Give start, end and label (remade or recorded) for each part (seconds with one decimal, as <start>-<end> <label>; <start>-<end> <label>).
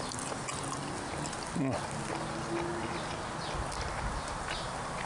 0.0-5.1 recorded